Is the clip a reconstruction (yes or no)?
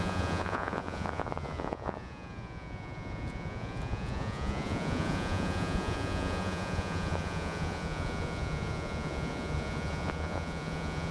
yes